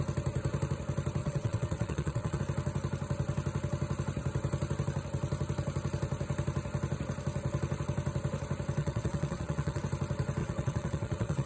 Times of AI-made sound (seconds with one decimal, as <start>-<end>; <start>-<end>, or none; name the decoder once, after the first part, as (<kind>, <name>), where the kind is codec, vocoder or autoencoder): 1.2-2.4 (vocoder, WaveNeXt); 8.8-9.8; 10.4-11.5